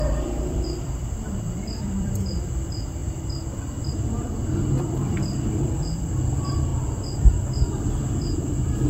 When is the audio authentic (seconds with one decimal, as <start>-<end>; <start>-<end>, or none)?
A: 3.0-3.9; 6.7-7.7